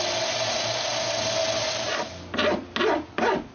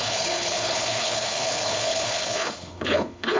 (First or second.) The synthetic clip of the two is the second